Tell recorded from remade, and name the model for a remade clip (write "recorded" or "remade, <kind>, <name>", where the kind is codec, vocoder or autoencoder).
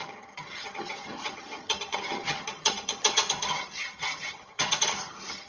remade, vocoder, HiFi-GAN